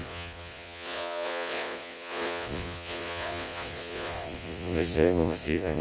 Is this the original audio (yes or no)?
no